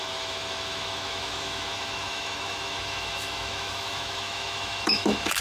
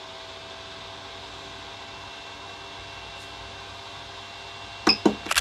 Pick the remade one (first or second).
first